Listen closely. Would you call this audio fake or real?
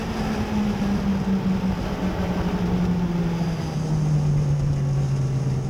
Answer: real